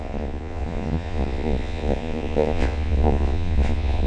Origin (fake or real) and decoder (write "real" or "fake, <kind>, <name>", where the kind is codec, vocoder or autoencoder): fake, vocoder, Vocos